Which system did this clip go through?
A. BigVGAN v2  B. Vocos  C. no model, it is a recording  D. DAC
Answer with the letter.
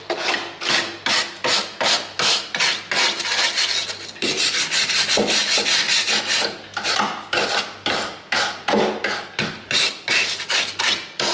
C